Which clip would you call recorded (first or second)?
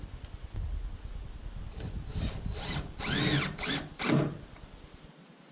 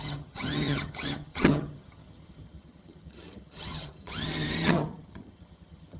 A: first